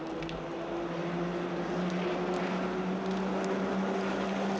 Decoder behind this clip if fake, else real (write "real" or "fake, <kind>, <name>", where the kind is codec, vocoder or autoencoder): real